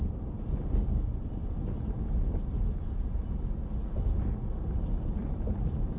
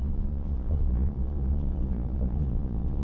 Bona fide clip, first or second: first